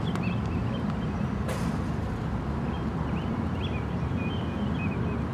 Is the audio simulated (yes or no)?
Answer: no